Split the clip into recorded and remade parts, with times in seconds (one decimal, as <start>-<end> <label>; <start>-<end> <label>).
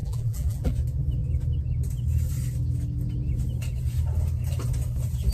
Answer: 0.0-0.7 remade; 0.7-5.3 recorded